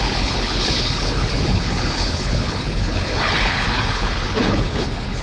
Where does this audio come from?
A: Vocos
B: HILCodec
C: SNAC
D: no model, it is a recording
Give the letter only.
B